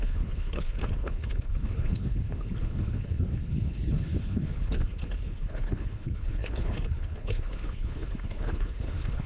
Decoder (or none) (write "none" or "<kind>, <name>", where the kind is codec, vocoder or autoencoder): codec, HILCodec